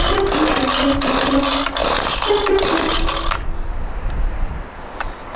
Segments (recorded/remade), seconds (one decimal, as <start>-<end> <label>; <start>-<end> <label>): 0.0-5.4 recorded